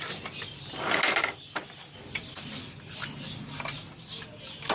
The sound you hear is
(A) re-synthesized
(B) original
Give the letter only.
B